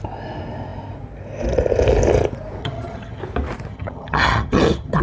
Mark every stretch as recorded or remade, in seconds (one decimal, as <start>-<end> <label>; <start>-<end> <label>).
0.0-2.6 recorded; 2.6-3.2 remade; 3.2-3.7 recorded; 3.7-5.0 remade